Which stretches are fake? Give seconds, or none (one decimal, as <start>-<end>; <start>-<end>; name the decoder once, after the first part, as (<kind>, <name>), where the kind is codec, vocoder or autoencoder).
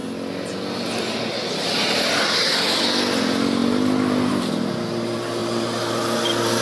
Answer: none